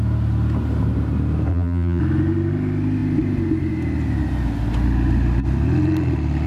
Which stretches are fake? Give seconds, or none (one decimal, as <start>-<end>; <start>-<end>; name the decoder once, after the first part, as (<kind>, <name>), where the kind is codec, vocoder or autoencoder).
1.5-2.0 (vocoder, BigVGAN v2)